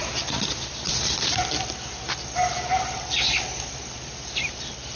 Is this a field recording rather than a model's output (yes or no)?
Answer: yes